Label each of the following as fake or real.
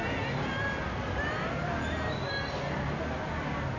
real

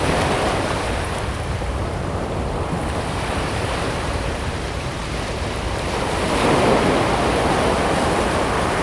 fake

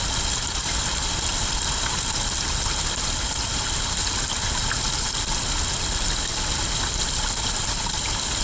real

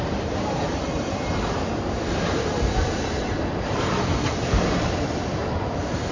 fake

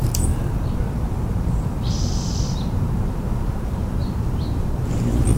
fake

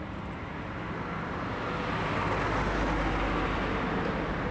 real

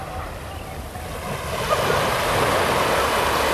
real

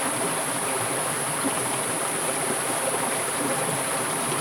fake